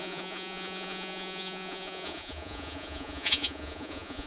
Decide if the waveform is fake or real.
fake